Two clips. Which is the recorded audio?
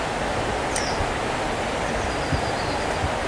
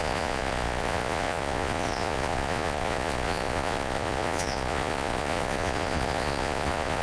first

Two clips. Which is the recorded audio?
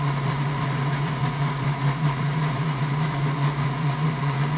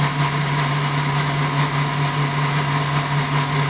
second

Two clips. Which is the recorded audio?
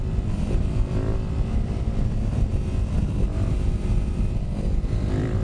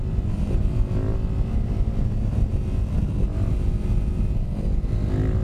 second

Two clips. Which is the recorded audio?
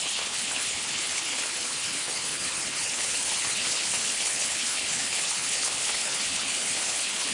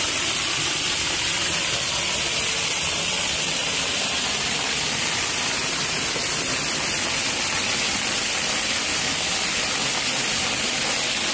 second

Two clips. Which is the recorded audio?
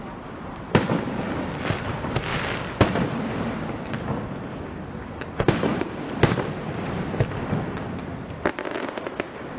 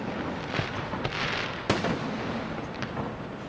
second